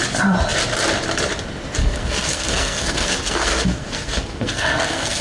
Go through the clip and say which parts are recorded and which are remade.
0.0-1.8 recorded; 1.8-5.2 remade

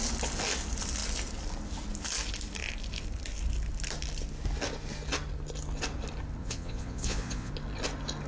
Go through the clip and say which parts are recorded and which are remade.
0.0-6.4 recorded; 6.4-7.5 remade; 7.5-8.3 recorded

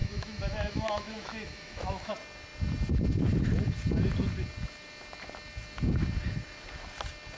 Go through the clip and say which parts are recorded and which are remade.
0.0-2.1 remade; 2.1-7.4 recorded

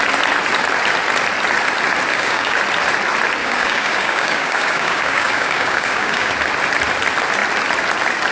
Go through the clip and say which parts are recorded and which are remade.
0.0-2.1 recorded; 2.1-2.6 remade; 2.6-3.4 recorded; 3.4-6.3 remade; 6.3-8.3 recorded

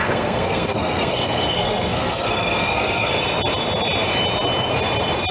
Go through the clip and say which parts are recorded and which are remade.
0.0-3.2 remade; 3.2-5.3 recorded

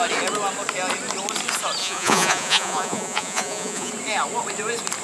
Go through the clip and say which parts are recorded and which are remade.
0.0-1.8 recorded; 1.8-3.9 remade; 3.9-5.0 recorded